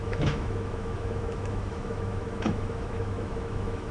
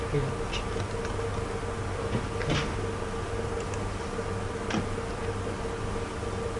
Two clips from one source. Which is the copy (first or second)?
first